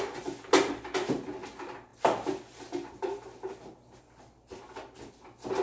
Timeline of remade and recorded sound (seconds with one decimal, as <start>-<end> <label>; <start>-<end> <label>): 0.0-5.6 recorded